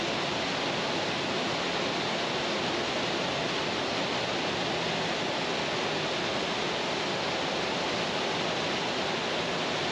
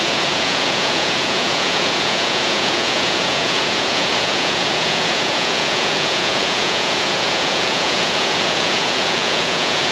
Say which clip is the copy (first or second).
second